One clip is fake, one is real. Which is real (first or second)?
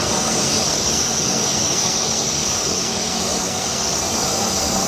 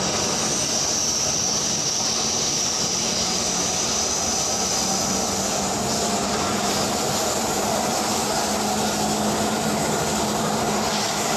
second